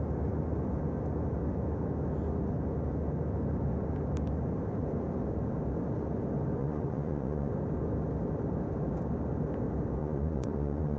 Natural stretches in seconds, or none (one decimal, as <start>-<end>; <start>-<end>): 0.0-6.6; 7.5-10.0